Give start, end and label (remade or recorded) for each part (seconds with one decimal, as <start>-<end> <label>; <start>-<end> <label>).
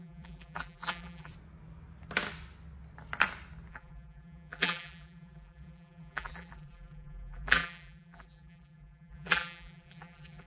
0.0-1.3 remade; 1.3-3.7 recorded; 3.7-10.5 remade